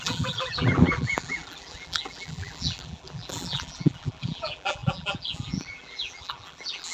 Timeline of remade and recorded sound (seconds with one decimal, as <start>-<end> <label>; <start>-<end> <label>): 0.0-6.9 remade